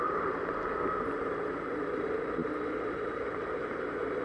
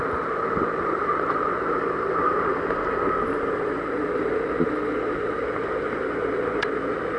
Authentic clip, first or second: second